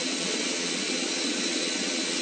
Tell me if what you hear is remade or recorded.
remade